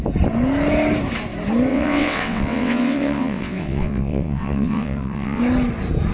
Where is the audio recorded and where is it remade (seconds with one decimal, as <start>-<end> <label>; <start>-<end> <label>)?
0.0-1.7 recorded; 1.7-5.4 remade; 5.4-6.1 recorded